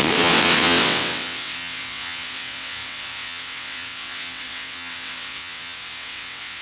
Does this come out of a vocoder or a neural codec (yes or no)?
yes